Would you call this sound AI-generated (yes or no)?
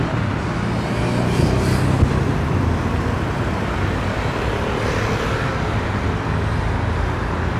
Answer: no